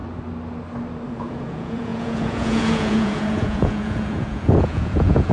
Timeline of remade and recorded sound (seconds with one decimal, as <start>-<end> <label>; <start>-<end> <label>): 0.0-1.1 recorded; 1.1-5.3 remade